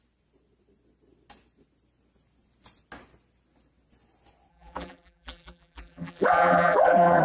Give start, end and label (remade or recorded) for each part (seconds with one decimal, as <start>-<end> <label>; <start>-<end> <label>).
0.0-4.5 recorded; 4.5-7.2 remade